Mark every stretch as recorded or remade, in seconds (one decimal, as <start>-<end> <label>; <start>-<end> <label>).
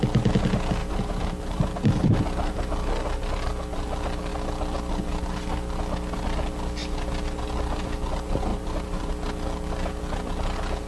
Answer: 0.0-0.8 recorded; 0.8-1.8 remade; 1.8-8.5 recorded; 8.5-9.1 remade; 9.1-10.9 recorded